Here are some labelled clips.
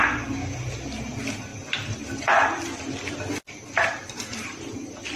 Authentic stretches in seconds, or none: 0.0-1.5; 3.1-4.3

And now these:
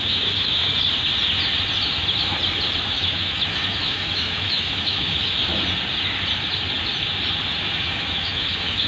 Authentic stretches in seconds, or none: 0.6-2.8; 5.5-7.6

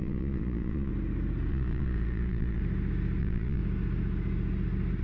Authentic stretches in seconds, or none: 0.9-1.5; 2.6-3.2; 3.6-5.0

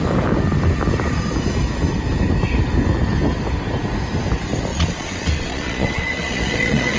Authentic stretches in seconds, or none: 0.0-4.7

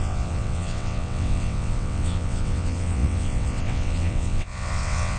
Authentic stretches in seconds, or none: none

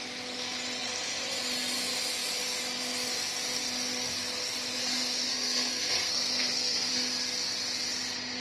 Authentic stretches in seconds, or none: 0.0-5.3; 6.9-8.4